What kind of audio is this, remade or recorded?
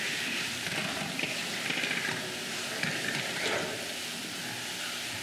remade